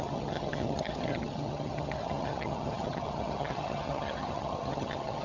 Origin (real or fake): fake